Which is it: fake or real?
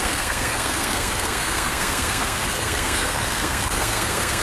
fake